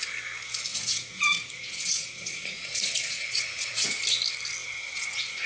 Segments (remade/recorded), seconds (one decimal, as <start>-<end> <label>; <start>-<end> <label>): 0.0-0.7 recorded; 0.7-4.0 remade; 4.0-4.6 recorded; 4.6-5.5 remade